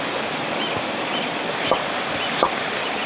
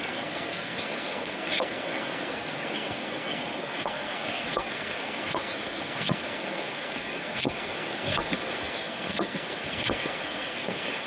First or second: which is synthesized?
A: second